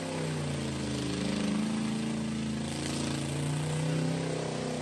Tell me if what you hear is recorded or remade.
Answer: recorded